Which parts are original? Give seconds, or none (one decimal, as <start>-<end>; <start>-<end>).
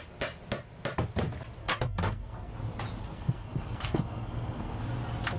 0.0-1.6; 2.5-3.0; 4.8-5.4